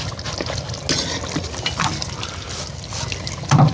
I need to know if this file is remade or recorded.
recorded